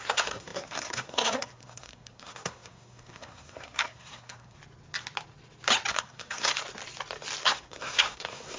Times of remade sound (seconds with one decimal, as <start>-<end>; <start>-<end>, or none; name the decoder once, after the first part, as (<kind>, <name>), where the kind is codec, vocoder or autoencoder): 0.0-4.6 (codec, SNAC); 5.9-6.5; 7.4-8.6